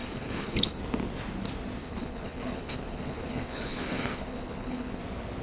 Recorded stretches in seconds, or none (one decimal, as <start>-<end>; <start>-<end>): 0.8-1.8; 5.0-5.4